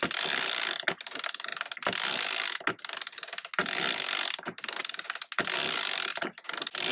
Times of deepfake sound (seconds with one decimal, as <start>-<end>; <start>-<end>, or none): none